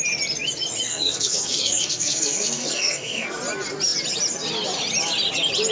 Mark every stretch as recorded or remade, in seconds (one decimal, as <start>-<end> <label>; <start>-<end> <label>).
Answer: 0.0-0.9 recorded; 0.9-3.4 remade; 3.4-5.7 recorded